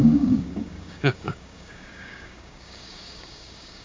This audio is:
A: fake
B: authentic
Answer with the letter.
A